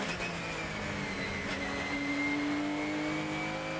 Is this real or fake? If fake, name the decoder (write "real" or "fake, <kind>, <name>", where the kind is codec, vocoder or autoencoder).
real